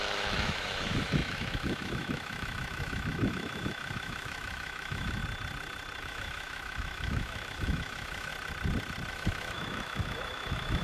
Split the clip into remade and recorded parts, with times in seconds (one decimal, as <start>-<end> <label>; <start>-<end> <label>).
0.0-5.2 remade; 5.2-6.0 recorded; 6.0-8.3 remade; 8.3-9.1 recorded; 9.1-10.8 remade